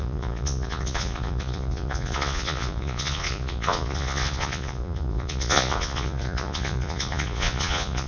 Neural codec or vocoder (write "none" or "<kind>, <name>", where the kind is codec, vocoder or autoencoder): vocoder, Vocos